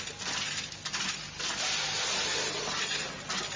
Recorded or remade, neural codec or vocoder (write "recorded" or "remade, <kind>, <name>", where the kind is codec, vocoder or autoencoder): recorded